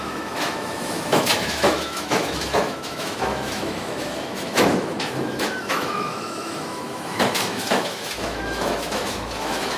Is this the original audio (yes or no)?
no